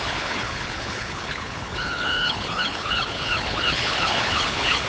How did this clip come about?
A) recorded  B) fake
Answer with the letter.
B